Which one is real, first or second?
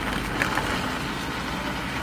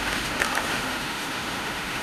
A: first